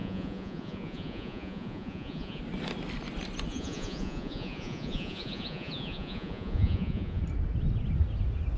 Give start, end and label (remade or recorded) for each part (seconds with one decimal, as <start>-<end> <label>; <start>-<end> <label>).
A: 0.0-2.4 remade; 2.4-3.5 recorded; 3.5-7.2 remade; 7.2-8.6 recorded